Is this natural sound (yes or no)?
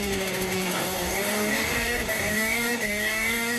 no